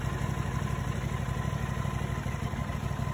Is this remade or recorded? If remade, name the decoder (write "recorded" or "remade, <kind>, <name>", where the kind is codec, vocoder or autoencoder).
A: recorded